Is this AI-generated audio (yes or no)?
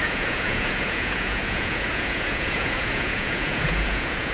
yes